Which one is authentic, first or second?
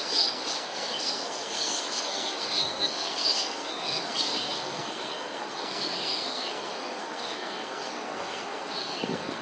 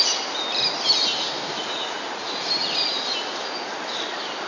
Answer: second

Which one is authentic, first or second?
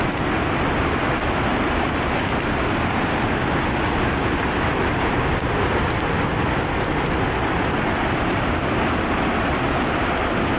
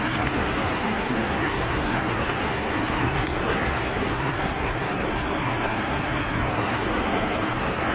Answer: first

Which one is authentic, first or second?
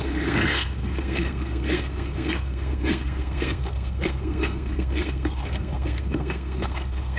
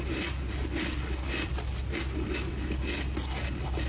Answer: second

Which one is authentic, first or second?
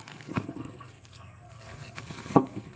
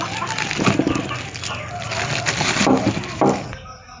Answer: second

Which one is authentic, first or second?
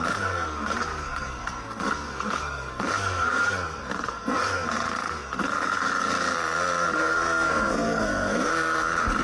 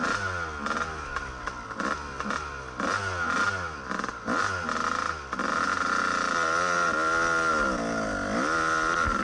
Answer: second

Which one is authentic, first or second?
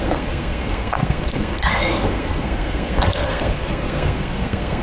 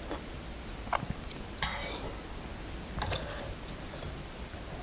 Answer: second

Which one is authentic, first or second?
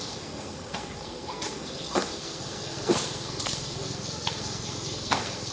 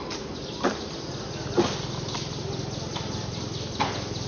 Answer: second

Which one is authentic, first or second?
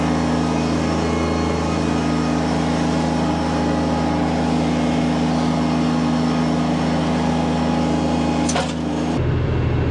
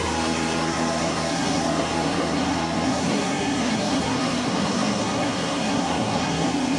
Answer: first